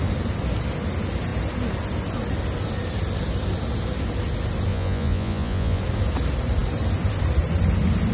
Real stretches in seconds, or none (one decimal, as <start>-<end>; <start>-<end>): 0.0-4.7; 5.8-8.1